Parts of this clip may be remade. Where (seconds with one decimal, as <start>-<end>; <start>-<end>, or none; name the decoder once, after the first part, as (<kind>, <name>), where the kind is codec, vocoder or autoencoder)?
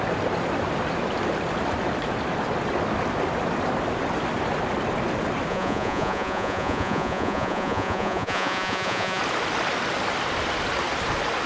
5.5-9.2 (vocoder, Vocos)